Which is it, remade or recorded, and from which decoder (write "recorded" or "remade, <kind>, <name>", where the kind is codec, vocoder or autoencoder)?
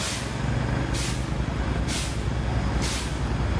recorded